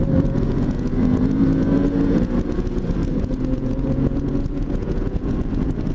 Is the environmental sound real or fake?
fake